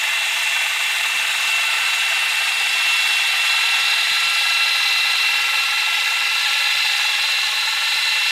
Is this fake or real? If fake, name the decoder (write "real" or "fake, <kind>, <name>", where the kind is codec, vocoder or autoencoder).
real